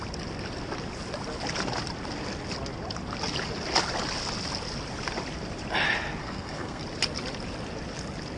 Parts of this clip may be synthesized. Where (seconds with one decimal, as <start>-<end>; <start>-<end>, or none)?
6.2-6.8